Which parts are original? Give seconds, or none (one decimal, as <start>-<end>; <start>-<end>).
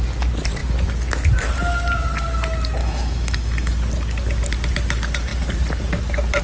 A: 0.0-2.8; 3.7-6.4